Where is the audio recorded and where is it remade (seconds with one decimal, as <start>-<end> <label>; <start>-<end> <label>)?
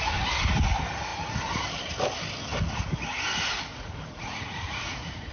0.0-3.7 recorded; 3.7-5.3 remade